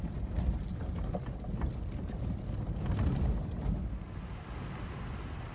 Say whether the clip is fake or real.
real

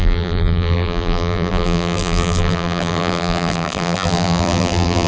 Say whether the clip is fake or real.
fake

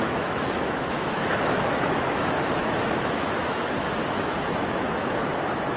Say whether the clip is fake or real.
fake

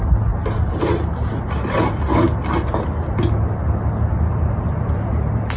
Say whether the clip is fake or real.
real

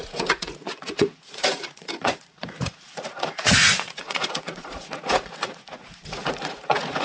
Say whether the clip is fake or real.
fake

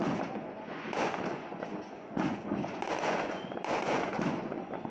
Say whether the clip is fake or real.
fake